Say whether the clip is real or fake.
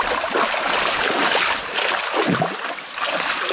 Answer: real